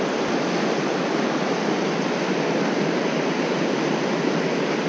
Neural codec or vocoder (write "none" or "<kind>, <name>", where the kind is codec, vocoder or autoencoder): none